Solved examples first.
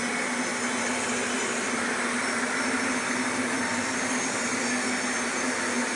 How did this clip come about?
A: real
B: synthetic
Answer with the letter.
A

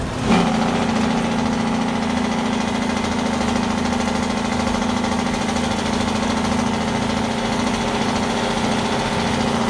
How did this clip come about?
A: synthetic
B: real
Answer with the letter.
B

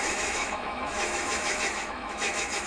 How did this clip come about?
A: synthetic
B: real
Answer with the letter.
A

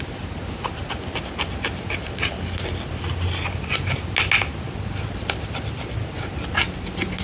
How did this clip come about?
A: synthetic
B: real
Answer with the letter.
B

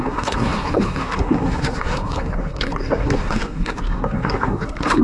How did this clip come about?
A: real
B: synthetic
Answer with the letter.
B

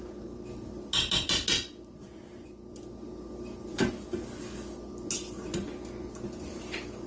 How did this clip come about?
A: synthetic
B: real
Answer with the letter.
B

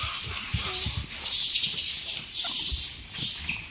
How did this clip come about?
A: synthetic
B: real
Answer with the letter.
B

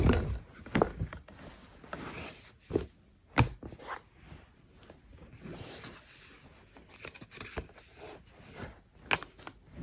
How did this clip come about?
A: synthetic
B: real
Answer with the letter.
B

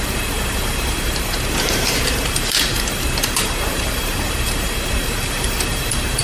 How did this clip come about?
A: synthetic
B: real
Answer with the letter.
A